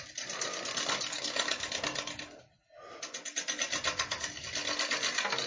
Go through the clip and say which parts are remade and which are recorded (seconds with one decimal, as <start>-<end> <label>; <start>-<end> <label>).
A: 0.0-5.5 recorded

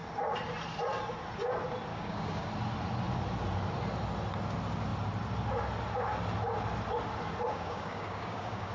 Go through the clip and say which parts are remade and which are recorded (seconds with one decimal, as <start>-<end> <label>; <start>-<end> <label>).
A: 0.0-1.9 recorded; 1.9-2.5 remade; 2.5-7.5 recorded; 7.5-8.7 remade

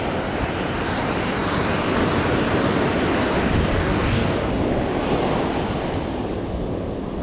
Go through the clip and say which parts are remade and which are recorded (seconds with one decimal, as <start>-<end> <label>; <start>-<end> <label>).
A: 0.0-3.8 recorded; 3.8-4.5 remade; 4.5-7.2 recorded

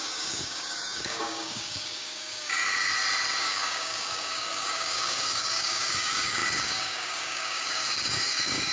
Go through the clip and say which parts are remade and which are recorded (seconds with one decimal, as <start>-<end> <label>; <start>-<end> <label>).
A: 0.0-2.6 remade; 2.6-3.4 recorded; 3.4-8.7 remade

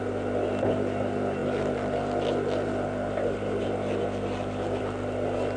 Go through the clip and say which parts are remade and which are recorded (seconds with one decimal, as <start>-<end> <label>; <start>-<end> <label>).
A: 0.0-5.6 recorded

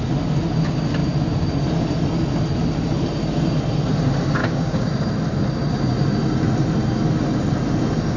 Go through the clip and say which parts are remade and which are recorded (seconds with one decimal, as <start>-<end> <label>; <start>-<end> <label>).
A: 0.0-4.4 recorded; 4.4-4.9 remade; 4.9-8.2 recorded